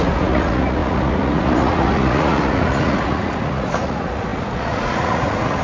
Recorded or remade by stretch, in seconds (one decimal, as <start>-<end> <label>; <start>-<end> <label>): 0.0-5.6 remade